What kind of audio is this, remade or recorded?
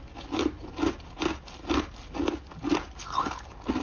recorded